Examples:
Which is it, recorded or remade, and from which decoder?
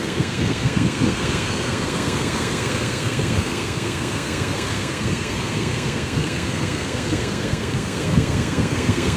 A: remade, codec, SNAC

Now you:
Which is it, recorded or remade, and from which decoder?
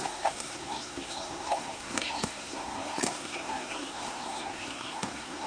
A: remade, codec, SNAC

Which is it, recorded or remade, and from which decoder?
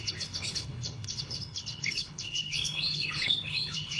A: remade, codec, HILCodec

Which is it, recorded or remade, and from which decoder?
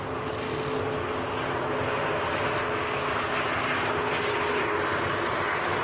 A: recorded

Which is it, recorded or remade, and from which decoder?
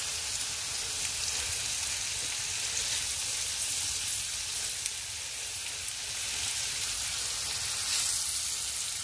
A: recorded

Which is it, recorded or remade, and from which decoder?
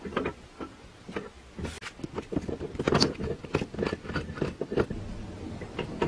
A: recorded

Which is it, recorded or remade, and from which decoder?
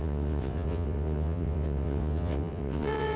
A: remade, vocoder, WaveNeXt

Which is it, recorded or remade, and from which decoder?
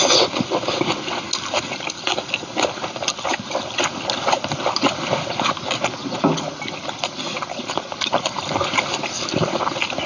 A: recorded